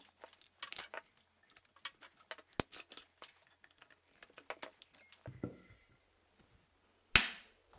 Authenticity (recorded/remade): recorded